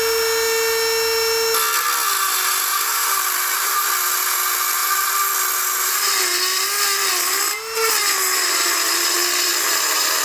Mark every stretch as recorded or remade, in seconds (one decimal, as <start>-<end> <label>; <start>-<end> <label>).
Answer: 0.0-2.7 recorded; 2.7-3.9 remade; 3.9-10.2 recorded